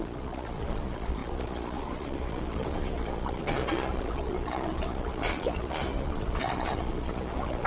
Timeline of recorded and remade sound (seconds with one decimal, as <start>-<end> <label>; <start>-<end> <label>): 0.0-7.7 remade

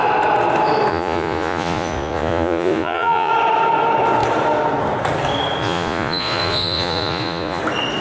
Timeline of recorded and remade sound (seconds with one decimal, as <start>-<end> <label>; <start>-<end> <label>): 0.0-0.9 recorded; 0.9-3.3 remade; 3.3-5.6 recorded; 5.6-7.6 remade; 7.6-8.0 recorded

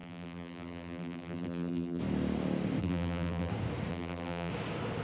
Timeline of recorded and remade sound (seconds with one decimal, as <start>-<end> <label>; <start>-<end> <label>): 0.0-2.0 remade; 2.0-2.8 recorded; 2.8-3.5 remade; 3.5-3.9 recorded; 3.9-4.5 remade; 4.5-5.0 recorded

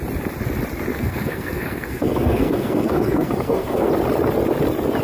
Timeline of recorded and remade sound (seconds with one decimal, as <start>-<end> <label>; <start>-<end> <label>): 0.0-0.9 recorded; 0.9-3.9 remade; 3.9-5.0 recorded